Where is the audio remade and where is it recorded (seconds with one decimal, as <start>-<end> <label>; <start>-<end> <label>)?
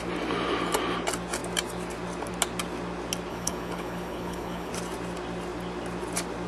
0.0-3.3 recorded; 3.3-4.7 remade; 4.7-6.5 recorded